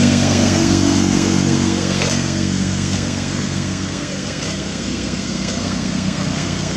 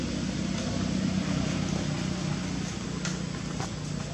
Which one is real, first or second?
second